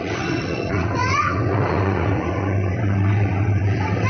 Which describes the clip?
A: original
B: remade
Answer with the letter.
B